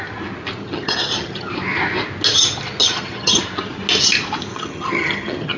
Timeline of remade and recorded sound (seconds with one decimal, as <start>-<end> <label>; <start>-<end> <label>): 0.0-0.6 recorded; 0.6-1.5 remade; 1.5-2.8 recorded; 2.8-3.4 remade; 3.4-4.5 recorded; 4.5-5.6 remade